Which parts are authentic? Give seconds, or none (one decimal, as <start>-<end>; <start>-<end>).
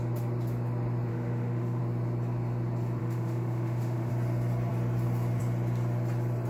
0.0-1.1; 1.8-3.0; 4.1-6.5